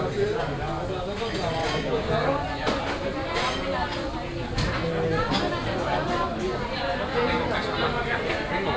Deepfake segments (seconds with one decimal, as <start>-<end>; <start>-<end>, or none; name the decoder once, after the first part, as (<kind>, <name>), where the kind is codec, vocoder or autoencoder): 1.6-2.1 (codec, DAC)